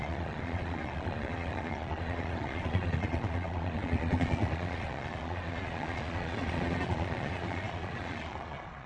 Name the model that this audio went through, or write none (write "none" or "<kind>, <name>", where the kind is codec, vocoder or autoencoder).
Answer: vocoder, Vocos